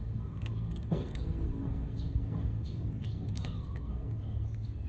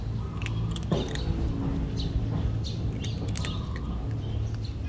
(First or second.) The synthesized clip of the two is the first